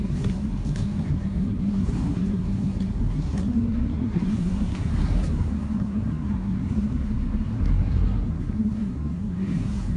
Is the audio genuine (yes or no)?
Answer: no